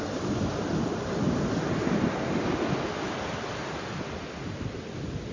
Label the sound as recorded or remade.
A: recorded